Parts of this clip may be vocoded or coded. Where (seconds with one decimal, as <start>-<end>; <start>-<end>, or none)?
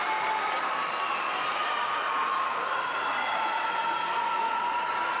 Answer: 1.5-4.6